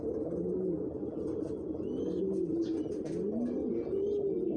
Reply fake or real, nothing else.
real